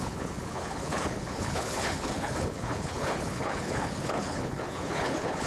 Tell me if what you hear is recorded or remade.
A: remade